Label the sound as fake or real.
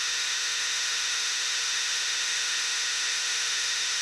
fake